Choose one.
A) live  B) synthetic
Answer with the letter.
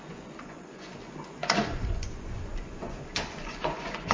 B